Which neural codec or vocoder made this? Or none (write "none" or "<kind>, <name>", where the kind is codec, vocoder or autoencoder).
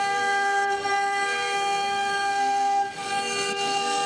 codec, SNAC